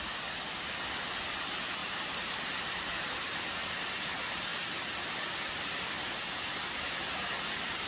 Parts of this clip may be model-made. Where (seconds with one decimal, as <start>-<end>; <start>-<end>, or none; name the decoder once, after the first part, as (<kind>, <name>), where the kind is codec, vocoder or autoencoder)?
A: 1.8-3.8 (vocoder, BigVGAN v2)